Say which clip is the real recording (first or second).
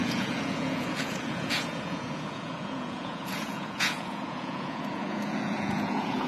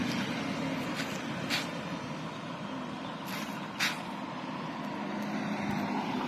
second